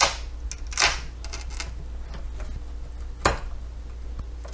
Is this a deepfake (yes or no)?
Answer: no